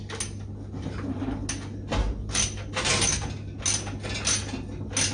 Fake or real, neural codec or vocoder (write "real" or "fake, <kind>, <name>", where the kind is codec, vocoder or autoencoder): real